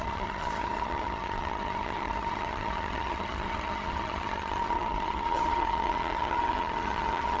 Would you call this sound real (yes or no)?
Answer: no